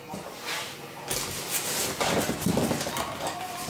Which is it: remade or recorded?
recorded